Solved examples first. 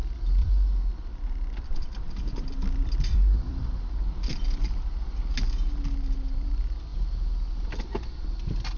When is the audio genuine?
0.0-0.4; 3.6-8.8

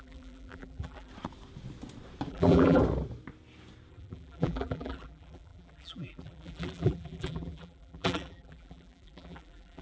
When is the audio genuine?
1.1-2.3; 2.8-3.9